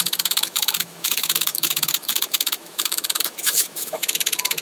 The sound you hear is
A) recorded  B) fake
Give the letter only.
B